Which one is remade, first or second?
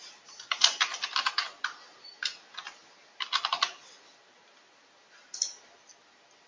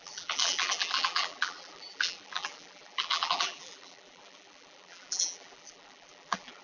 second